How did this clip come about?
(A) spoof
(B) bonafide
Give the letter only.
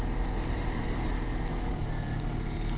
B